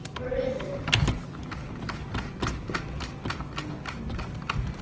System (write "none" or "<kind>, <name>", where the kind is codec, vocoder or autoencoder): none